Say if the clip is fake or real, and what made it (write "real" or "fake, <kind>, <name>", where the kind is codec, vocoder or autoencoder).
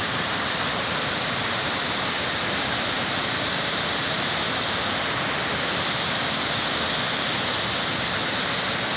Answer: real